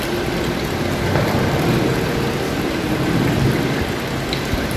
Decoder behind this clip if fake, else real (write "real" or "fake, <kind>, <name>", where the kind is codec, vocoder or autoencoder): fake, vocoder, BigVGAN v2